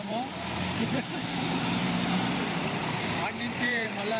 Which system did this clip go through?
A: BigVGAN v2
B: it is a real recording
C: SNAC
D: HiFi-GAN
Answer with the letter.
A